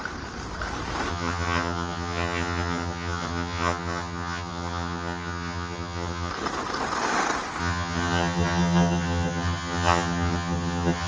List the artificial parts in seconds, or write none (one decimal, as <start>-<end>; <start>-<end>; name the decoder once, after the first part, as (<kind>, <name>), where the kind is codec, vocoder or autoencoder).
1.1-6.3 (vocoder, HiFi-GAN); 7.6-11.1